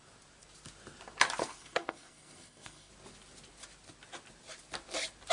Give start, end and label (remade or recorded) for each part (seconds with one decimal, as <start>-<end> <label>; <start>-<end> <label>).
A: 0.0-1.4 recorded; 1.4-2.9 remade; 2.9-5.3 recorded